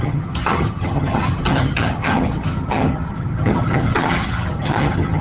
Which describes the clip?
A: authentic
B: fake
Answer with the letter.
B